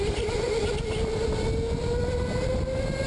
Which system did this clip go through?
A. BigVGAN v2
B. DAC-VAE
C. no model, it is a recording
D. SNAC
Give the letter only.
C